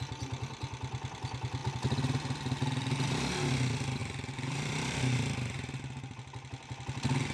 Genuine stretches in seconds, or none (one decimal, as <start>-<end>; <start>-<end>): 0.0-4.0; 5.8-7.3